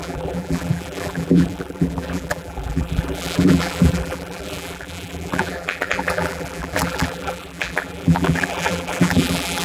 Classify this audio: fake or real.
fake